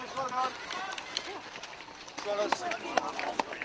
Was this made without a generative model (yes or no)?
yes